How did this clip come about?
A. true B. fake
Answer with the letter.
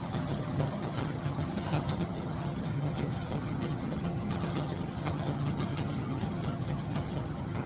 B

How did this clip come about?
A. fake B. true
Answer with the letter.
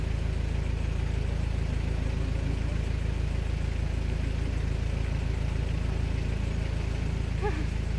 B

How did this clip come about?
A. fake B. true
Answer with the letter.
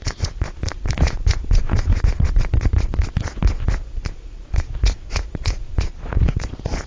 A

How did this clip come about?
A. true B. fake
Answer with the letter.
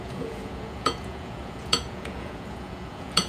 B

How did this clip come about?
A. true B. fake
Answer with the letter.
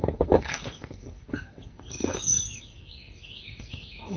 B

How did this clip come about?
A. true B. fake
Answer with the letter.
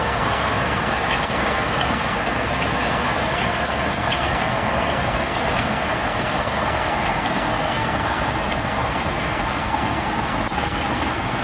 B